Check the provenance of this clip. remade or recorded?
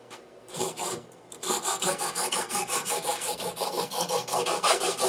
remade